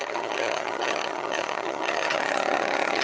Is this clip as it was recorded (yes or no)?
no